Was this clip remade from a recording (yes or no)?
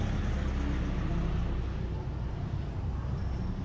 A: no